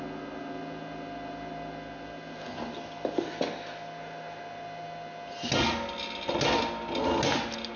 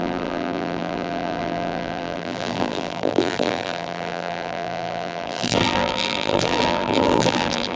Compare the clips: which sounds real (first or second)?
first